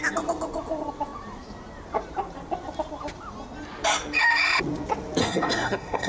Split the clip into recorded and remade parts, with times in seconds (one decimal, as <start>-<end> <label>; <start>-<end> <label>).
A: 0.0-5.2 recorded; 5.2-6.1 remade